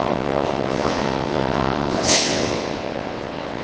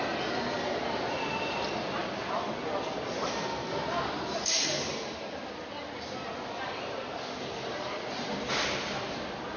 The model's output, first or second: first